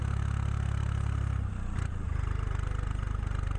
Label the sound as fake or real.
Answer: real